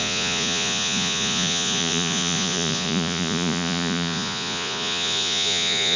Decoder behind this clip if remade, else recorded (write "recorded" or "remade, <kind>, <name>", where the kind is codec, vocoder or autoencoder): remade, vocoder, Vocos